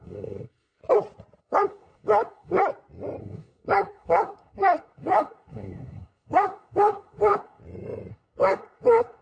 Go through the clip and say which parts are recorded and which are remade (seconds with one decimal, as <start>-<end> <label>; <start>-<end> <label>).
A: 0.0-0.8 remade; 0.8-1.4 recorded; 1.4-2.6 remade; 2.6-3.2 recorded; 3.2-7.6 remade; 7.6-8.1 recorded; 8.1-9.2 remade